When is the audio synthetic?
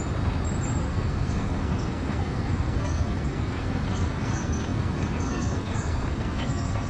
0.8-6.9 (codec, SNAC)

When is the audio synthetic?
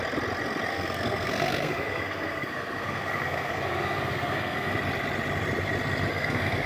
0.7-4.7 (codec, SNAC); 6.1-6.7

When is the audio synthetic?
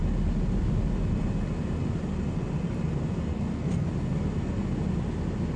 3.3-3.9 (codec, SNAC)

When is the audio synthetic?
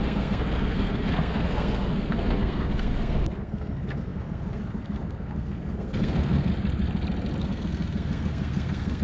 0.0-6.5 (codec, SNAC); 7.4-9.0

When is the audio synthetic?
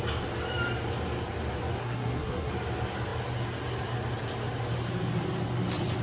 1.8-2.5 (codec, SNAC)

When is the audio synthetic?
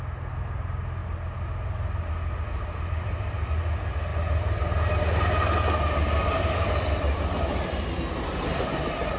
none